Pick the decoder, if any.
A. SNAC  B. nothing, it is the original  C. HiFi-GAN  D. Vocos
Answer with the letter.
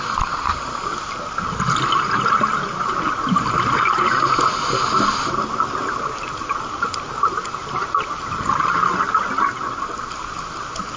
B